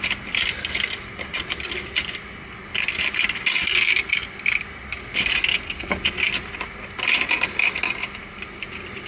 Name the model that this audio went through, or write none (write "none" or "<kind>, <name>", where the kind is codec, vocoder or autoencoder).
none